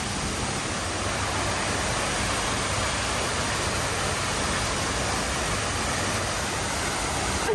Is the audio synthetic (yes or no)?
no